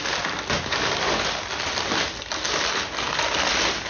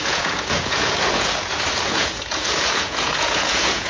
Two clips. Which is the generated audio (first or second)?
second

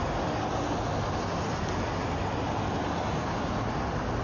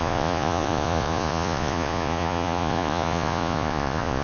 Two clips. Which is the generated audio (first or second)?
second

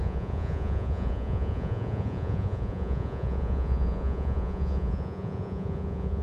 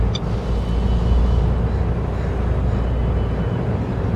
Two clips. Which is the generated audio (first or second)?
first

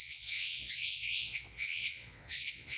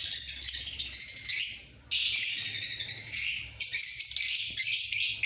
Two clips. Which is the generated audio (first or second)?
first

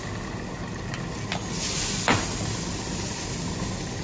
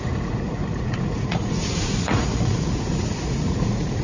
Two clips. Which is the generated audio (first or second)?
second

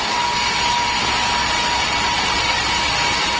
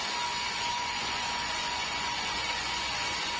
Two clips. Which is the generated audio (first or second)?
second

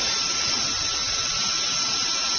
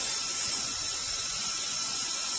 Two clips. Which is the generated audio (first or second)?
second